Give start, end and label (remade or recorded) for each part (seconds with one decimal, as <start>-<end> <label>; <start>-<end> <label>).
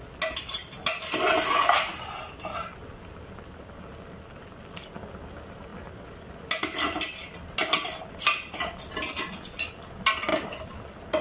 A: 0.0-11.2 recorded